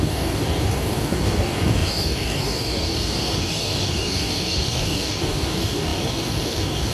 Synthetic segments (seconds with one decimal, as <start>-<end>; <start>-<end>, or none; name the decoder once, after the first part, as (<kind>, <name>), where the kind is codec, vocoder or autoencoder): 0.0-6.9 (codec, DAC)